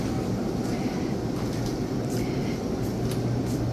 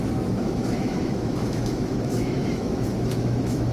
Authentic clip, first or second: first